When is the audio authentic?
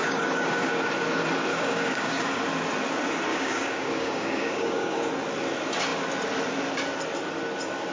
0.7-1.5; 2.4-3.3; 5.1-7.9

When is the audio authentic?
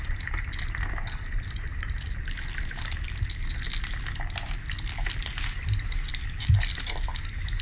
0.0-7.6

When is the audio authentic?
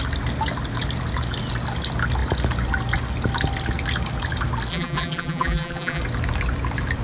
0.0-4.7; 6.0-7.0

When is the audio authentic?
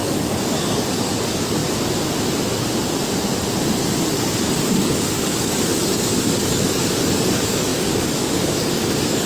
1.6-4.1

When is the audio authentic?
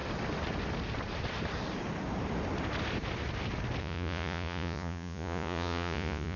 0.0-3.8